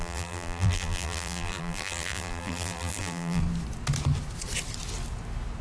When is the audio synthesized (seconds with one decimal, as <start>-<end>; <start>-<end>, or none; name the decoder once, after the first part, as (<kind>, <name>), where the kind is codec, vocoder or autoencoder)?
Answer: 0.0-3.4 (vocoder, BigVGAN v2)